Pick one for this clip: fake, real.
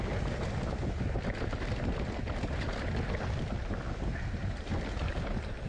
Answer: real